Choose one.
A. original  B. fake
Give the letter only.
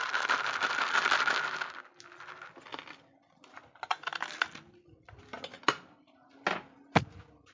A